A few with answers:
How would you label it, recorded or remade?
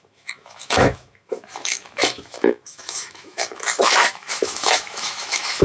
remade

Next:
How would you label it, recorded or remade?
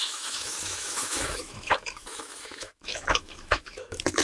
remade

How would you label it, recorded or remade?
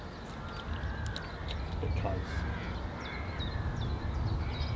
recorded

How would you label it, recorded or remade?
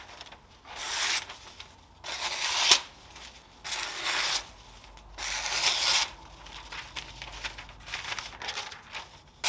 recorded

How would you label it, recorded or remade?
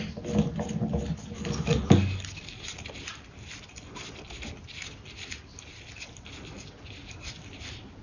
recorded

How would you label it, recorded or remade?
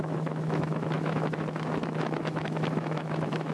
remade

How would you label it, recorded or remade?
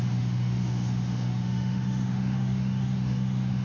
remade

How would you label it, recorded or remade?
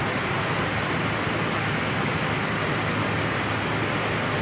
recorded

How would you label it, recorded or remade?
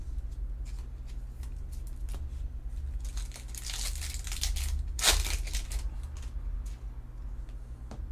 recorded